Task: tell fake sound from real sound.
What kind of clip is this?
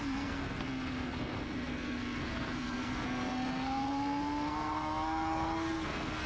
fake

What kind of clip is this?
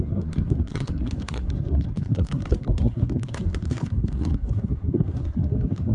fake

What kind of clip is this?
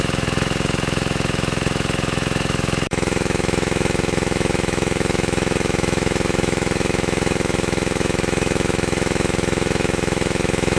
fake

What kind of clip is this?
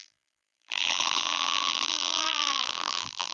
fake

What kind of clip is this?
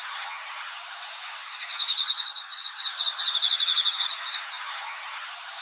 fake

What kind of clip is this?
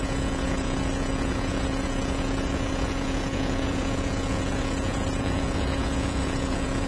fake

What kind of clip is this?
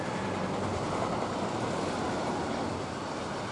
real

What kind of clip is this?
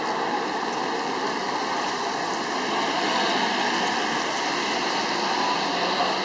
real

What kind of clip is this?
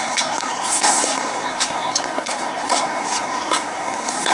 fake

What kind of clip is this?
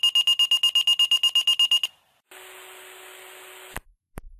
real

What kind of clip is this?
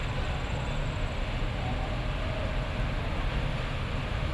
real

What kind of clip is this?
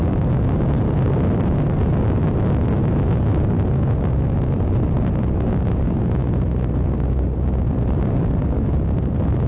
real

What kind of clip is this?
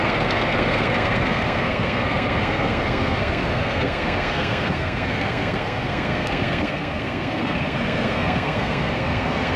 fake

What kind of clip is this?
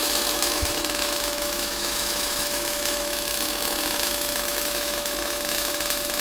fake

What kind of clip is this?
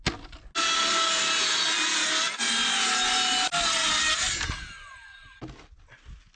real